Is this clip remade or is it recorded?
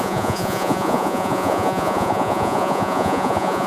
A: remade